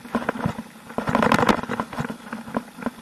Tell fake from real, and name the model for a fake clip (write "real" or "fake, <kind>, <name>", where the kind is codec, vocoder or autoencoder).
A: real